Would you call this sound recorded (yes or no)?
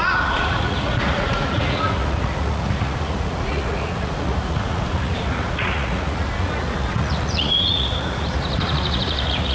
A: no